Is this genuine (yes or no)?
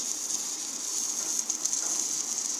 yes